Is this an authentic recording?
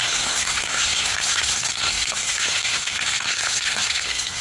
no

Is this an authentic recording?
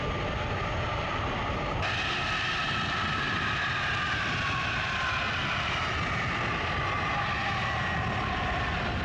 yes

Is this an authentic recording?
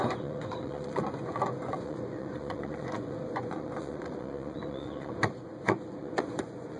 no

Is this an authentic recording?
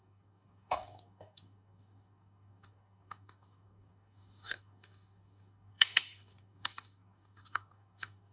no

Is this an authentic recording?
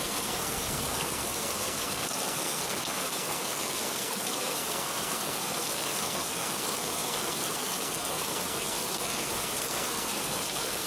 no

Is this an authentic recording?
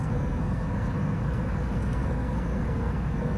no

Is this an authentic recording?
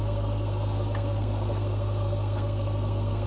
no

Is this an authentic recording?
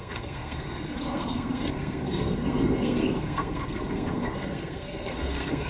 no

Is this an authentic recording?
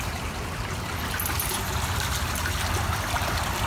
yes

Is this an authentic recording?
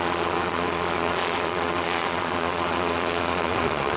no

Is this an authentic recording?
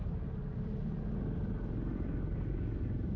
yes